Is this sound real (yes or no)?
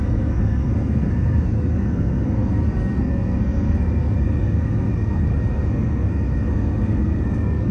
no